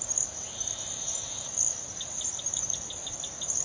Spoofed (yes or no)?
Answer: no